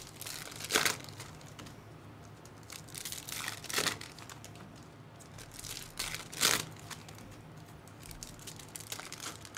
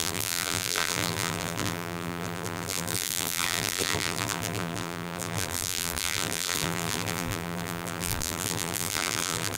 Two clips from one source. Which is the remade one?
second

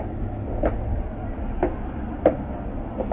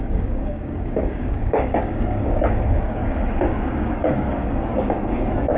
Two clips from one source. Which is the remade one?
second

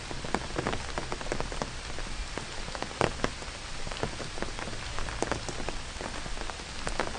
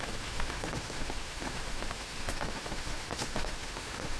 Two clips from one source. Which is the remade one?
second